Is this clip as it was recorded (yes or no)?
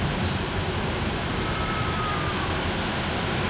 yes